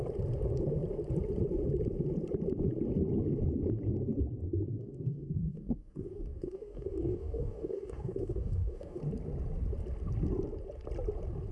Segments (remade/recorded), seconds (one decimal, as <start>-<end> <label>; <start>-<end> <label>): 0.0-4.7 recorded; 4.7-9.0 remade; 9.0-11.5 recorded